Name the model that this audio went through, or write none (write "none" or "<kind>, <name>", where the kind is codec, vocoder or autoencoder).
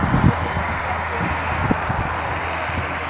none